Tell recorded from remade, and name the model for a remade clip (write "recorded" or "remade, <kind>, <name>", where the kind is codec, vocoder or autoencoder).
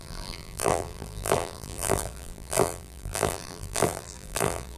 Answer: remade, vocoder, BigVGAN v2